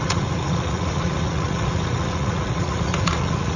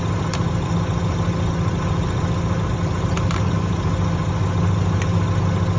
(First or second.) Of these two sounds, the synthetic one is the first